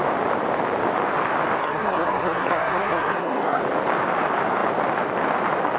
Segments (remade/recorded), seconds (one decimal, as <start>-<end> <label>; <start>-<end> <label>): 0.0-1.6 recorded; 1.6-3.6 remade; 3.6-5.8 recorded